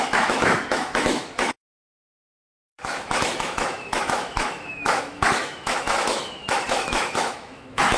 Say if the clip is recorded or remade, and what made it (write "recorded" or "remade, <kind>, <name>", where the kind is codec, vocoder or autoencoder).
remade, autoencoder, DAC-VAE